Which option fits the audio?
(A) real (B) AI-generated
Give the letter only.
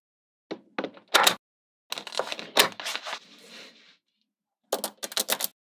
A